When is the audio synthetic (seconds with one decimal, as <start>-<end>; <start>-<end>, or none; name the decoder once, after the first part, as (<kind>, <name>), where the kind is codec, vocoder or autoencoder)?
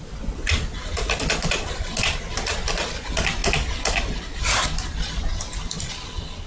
none